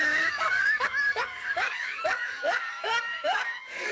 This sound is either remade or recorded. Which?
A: remade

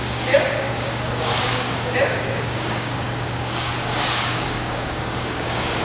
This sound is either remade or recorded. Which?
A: remade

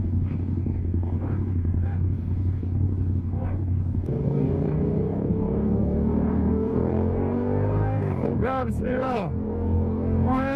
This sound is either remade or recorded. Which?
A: remade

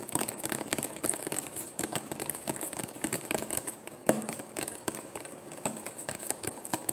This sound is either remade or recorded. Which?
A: remade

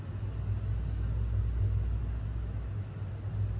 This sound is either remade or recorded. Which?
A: recorded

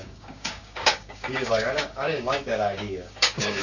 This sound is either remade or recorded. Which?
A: remade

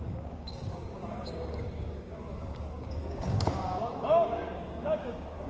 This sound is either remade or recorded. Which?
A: remade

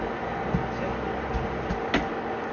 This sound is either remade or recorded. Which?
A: recorded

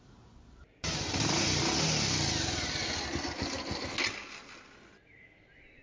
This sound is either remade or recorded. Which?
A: recorded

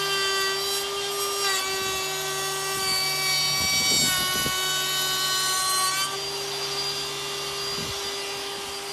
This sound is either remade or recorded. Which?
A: recorded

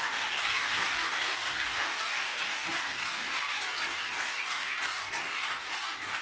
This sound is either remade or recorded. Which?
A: remade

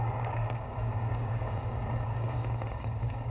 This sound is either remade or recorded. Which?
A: remade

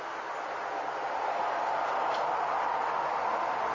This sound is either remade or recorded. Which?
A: recorded